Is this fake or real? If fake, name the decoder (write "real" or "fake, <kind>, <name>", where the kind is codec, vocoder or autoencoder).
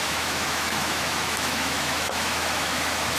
fake, autoencoder, DAC-VAE